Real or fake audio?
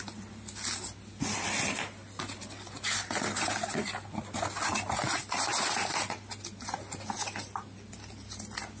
real